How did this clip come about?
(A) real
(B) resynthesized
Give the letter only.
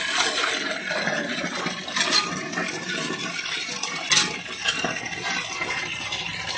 A